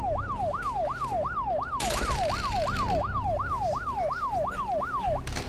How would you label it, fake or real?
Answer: real